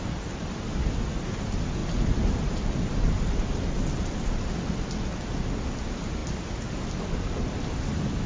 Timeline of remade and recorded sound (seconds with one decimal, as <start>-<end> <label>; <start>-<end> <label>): 0.0-8.3 recorded